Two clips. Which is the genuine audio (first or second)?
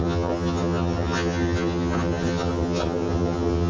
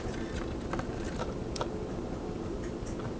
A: second